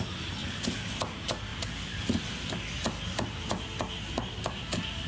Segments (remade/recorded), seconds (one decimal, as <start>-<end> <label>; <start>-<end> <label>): 0.0-5.1 recorded